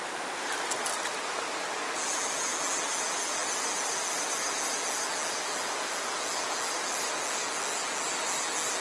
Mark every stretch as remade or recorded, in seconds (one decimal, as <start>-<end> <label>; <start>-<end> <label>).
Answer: 0.0-8.8 recorded